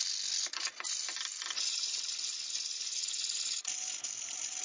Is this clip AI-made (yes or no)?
no